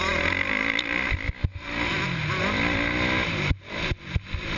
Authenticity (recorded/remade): recorded